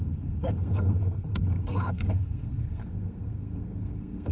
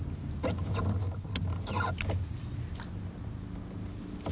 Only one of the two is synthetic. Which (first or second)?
first